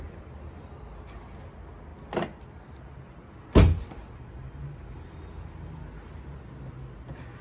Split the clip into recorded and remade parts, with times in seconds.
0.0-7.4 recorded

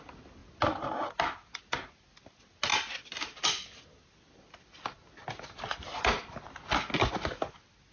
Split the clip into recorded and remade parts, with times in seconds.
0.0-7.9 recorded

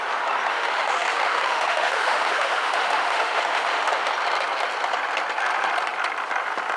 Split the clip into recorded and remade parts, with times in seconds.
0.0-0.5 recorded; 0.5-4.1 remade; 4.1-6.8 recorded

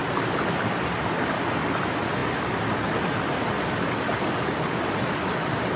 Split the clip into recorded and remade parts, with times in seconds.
0.0-5.8 recorded